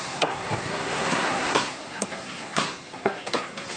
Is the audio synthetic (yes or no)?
yes